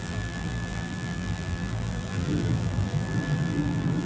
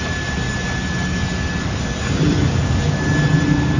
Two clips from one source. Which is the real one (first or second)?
second